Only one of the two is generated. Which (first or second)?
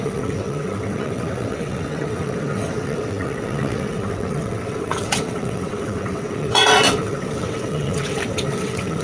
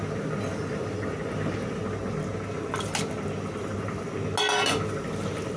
first